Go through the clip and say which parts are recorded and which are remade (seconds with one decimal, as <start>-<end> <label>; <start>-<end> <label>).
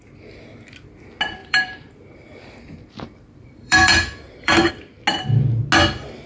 0.0-1.4 recorded; 1.4-4.7 remade; 4.7-6.3 recorded